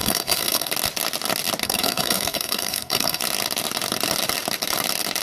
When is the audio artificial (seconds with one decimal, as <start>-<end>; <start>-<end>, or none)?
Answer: 0.0-0.7; 1.6-3.2

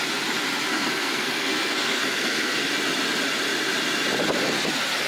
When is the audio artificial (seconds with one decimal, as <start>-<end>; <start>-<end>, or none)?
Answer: 0.7-2.7

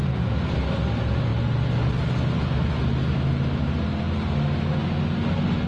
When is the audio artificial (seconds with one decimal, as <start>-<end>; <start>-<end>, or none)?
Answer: none

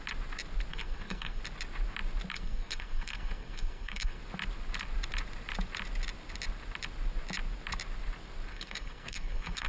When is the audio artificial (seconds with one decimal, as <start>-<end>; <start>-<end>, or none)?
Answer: 0.7-1.4; 2.3-4.2; 8.5-9.7

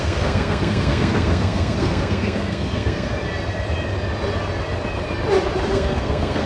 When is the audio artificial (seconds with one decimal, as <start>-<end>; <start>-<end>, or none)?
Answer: 0.0-3.1; 5.7-6.5

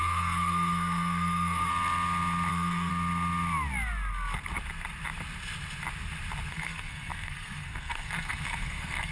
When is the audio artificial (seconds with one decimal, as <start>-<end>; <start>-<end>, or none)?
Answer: 0.0-1.7; 2.5-2.9; 6.5-9.1

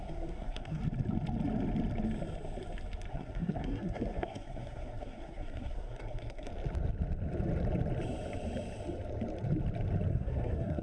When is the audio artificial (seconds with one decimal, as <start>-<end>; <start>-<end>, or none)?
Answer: 0.0-0.8; 3.1-6.5; 10.1-10.8